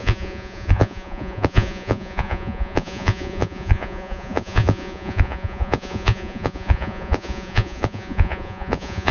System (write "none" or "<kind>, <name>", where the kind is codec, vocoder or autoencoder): vocoder, Vocos